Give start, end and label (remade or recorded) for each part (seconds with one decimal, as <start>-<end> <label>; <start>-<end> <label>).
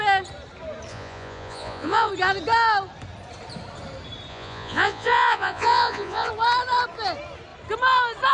0.0-0.9 recorded; 0.9-2.1 remade; 2.1-4.3 recorded; 4.3-6.3 remade; 6.3-8.3 recorded